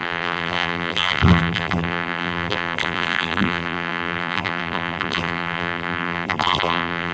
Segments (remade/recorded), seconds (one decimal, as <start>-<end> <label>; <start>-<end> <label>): 0.0-7.1 remade